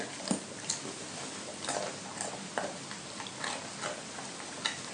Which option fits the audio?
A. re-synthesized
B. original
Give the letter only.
B